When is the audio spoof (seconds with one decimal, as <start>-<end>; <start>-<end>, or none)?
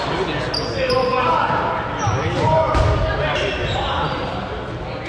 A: 1.1-2.8; 3.6-4.5